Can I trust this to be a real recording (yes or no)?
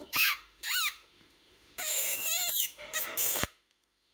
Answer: no